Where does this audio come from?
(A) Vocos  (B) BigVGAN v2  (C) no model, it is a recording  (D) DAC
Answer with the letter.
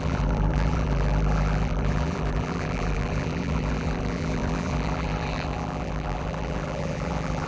B